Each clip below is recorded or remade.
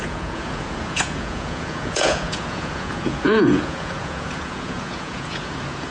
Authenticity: remade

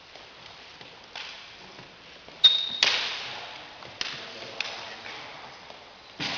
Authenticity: recorded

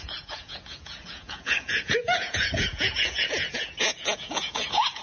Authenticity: remade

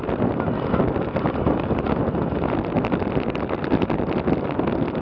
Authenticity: recorded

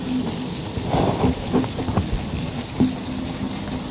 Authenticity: recorded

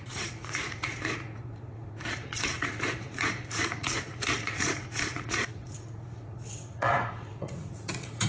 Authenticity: remade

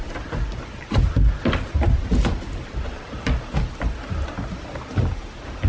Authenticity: recorded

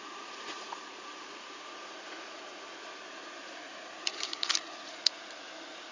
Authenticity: remade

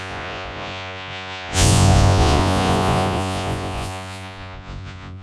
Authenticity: remade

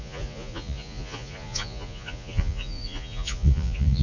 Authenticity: remade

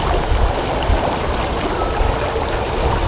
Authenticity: recorded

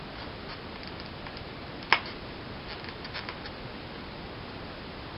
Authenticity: recorded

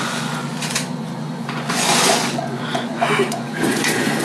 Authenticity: remade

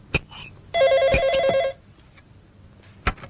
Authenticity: recorded